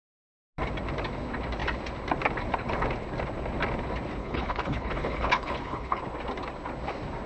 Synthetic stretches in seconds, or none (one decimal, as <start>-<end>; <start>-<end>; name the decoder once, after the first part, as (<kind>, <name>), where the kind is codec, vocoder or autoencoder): 4.2-6.0 (codec, HILCodec)